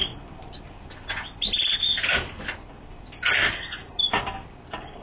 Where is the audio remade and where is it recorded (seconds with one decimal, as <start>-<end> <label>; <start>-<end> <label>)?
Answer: 0.0-5.0 recorded